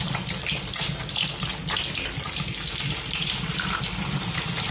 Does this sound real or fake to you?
real